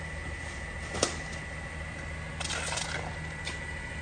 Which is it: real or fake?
real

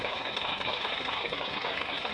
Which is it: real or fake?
fake